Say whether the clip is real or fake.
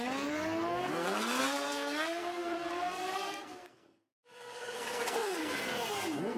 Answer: fake